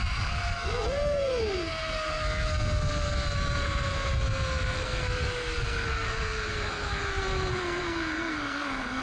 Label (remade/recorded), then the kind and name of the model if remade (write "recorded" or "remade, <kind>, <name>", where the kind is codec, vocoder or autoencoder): remade, codec, SNAC